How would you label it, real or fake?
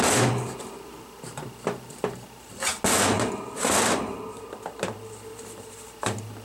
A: real